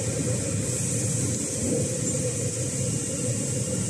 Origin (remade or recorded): recorded